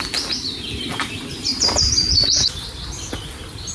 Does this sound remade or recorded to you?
recorded